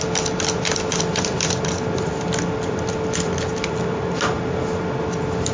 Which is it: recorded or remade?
recorded